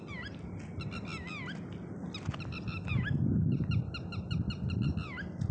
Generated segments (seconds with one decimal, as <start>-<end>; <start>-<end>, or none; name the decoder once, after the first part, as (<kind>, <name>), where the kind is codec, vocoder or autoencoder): none